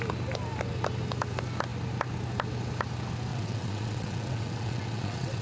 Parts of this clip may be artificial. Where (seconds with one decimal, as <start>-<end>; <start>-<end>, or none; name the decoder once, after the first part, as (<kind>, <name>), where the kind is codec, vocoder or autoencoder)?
3.3-5.4 (vocoder, WaveNeXt)